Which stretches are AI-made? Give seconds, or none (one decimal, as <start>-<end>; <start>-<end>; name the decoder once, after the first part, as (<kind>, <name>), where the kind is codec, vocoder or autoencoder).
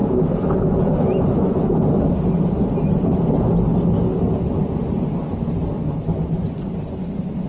none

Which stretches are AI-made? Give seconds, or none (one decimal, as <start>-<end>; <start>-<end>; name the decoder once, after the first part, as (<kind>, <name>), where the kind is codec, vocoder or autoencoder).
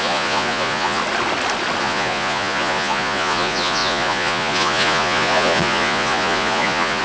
0.0-1.0 (vocoder, Vocos); 1.8-7.0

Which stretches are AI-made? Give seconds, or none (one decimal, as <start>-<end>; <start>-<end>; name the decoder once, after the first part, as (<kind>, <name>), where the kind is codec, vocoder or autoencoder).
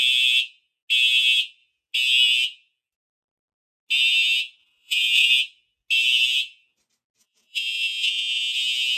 4.6-5.3 (vocoder, Vocos); 7.2-8.4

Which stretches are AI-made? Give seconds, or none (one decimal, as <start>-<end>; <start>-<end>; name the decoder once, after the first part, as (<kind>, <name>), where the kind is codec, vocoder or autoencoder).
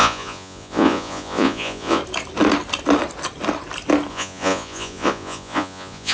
0.0-2.0 (vocoder, Vocos); 4.1-6.1